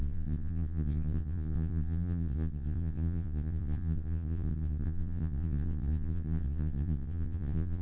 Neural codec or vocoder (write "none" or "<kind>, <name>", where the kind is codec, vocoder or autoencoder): vocoder, Vocos